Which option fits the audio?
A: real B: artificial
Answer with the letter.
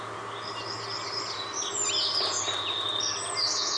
A